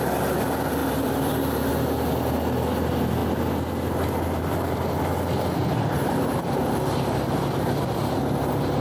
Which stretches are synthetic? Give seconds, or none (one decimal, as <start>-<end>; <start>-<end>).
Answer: 0.8-1.7